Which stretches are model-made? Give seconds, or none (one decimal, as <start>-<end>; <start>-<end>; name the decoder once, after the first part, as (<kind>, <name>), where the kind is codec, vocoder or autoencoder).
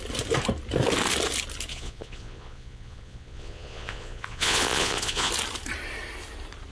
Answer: 1.7-5.3 (vocoder, Vocos)